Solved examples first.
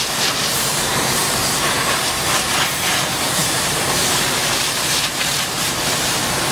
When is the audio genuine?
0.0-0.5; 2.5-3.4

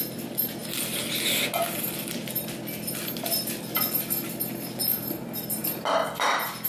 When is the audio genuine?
0.0-6.7